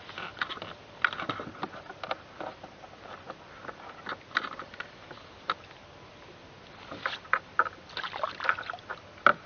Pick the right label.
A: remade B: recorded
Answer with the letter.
B